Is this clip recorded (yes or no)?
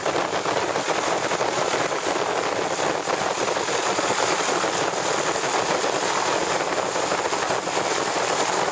yes